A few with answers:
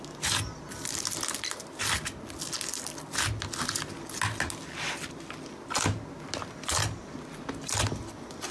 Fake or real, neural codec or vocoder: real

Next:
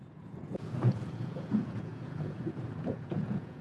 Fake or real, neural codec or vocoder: fake, vocoder, Vocos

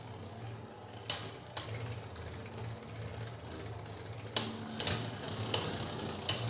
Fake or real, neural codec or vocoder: real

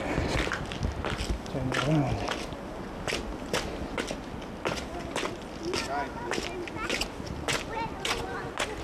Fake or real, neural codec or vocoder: real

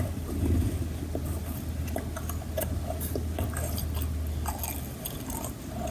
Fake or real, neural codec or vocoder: real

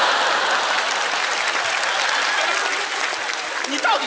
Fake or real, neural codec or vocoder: real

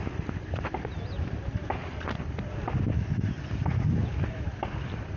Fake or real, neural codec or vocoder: real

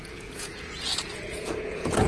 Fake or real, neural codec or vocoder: fake, vocoder, Vocos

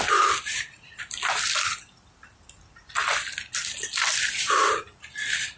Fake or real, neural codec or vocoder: real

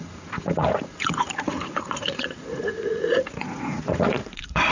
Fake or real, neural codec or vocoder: fake, vocoder, Vocos